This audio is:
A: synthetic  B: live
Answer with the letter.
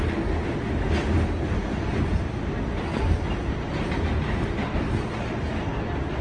B